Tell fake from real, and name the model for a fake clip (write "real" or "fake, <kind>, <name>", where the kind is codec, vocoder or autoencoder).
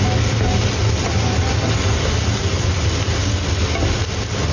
real